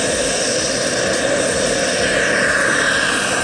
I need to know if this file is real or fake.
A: real